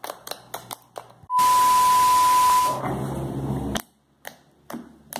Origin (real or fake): real